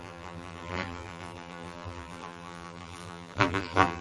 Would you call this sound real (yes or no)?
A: no